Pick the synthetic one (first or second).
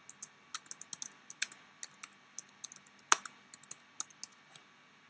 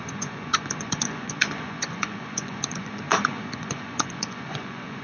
second